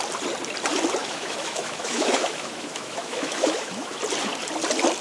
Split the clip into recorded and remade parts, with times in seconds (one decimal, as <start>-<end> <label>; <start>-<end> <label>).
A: 0.0-1.0 recorded; 1.0-4.0 remade; 4.0-5.0 recorded